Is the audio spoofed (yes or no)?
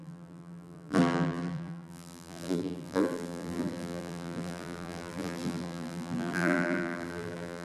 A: yes